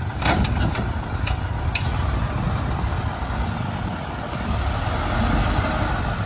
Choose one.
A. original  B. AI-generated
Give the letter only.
A